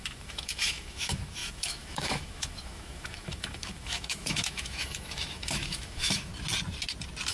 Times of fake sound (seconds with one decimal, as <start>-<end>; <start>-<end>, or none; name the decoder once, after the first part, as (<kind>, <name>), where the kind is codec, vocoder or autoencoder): 0.0-6.3 (autoencoder, DAC-VAE)